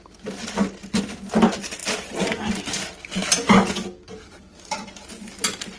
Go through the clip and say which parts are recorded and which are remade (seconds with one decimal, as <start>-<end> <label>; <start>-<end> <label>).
0.0-5.8 recorded